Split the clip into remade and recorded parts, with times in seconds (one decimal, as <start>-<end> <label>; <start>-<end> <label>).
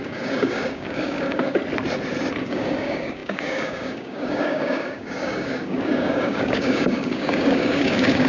0.0-1.6 remade; 1.6-2.4 recorded; 2.4-8.3 remade